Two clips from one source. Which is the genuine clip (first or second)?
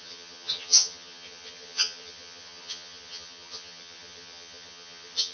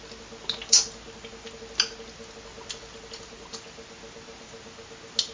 second